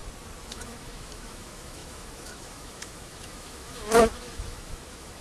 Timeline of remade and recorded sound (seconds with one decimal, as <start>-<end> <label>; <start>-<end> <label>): 0.0-0.5 recorded; 0.5-5.2 remade